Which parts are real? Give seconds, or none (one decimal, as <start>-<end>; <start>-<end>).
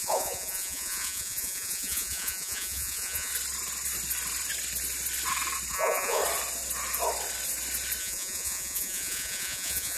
3.3-5.7; 6.2-8.0